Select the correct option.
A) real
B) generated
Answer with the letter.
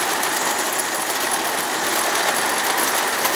A